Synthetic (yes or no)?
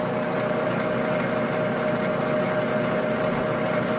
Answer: no